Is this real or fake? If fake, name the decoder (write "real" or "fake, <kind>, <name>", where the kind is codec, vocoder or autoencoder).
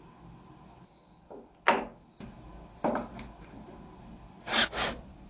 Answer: real